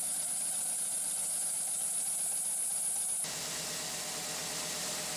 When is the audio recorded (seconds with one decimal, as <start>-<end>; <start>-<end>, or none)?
0.0-5.2